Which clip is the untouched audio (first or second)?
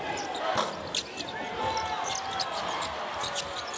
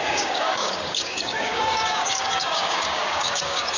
first